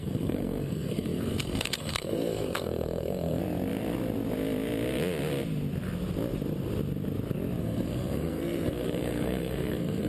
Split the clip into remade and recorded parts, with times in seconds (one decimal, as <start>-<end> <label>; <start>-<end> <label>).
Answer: 0.0-3.4 remade; 3.4-7.6 recorded; 7.6-10.1 remade